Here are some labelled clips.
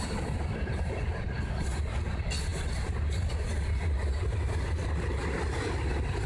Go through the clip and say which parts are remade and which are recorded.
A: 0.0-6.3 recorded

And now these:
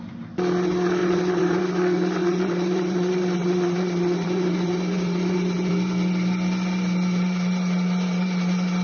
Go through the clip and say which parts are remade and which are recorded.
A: 0.0-1.0 recorded; 1.0-1.6 remade; 1.6-2.2 recorded; 2.2-5.7 remade; 5.7-8.8 recorded

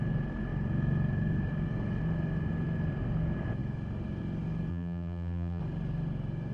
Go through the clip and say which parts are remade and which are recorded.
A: 0.0-4.7 recorded; 4.7-5.6 remade; 5.6-6.5 recorded

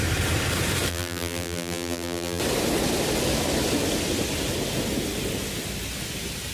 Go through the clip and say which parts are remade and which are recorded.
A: 0.0-0.9 recorded; 0.9-2.4 remade; 2.4-6.5 recorded

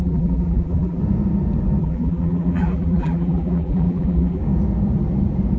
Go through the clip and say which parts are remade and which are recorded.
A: 0.0-1.0 remade; 1.0-1.8 recorded; 1.8-4.4 remade; 4.4-5.6 recorded

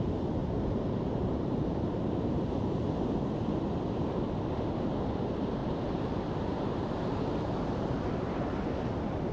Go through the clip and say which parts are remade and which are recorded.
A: 0.0-0.4 recorded; 0.4-2.5 remade; 2.5-5.6 recorded; 5.6-8.7 remade; 8.7-9.3 recorded

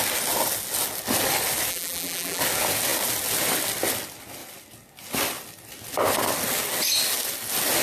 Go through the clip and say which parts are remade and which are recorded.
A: 0.0-1.7 recorded; 1.7-2.4 remade; 2.4-7.8 recorded